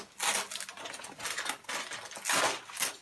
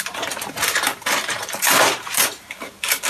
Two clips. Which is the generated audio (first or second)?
second